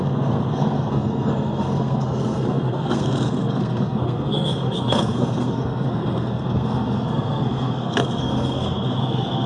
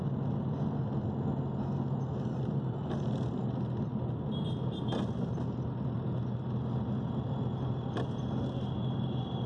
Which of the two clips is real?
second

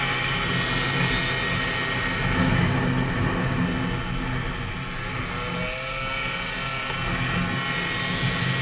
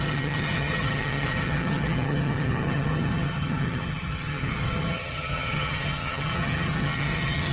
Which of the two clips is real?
first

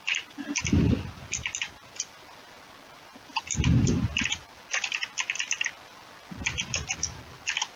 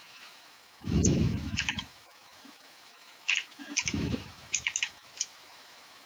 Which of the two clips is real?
first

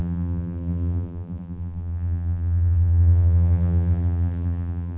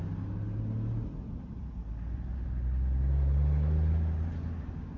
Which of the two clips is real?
second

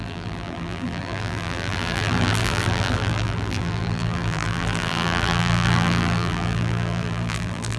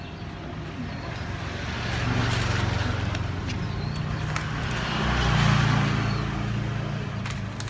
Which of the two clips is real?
second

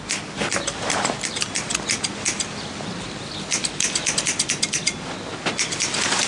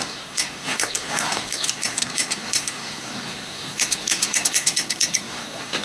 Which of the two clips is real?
first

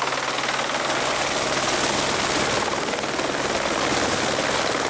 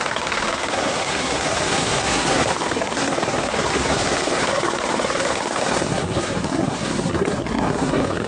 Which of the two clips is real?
first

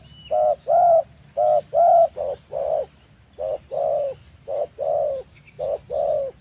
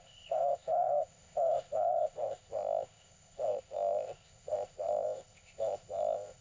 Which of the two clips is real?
first